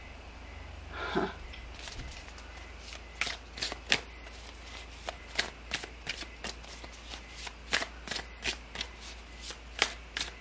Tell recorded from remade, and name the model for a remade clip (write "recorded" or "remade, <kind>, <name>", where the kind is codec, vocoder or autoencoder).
recorded